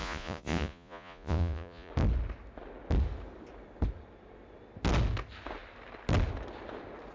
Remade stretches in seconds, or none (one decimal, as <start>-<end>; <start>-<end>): 0.0-1.9